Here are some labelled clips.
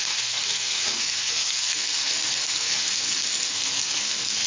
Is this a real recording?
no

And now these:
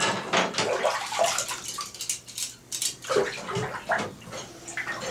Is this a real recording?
yes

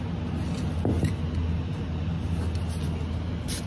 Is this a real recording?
yes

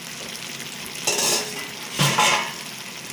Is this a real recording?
yes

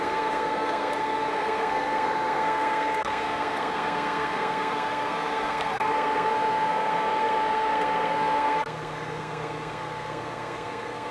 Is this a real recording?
no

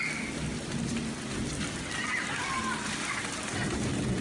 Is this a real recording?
yes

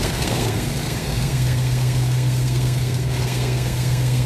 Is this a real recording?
no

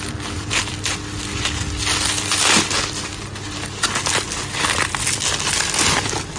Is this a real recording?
yes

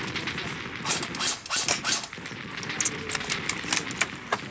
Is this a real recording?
yes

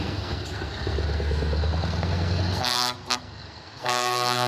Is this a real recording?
no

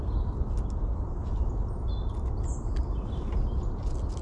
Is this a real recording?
yes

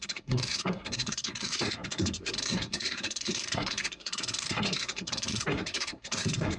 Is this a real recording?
no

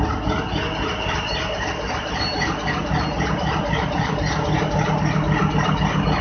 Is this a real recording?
yes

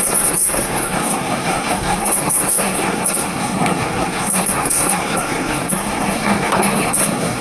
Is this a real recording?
no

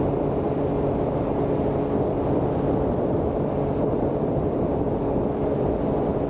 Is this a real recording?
yes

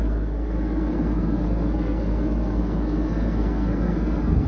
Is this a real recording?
no